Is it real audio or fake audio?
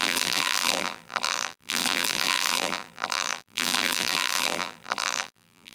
fake